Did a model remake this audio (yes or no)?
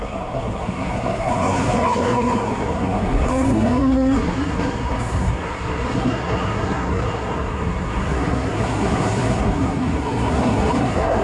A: yes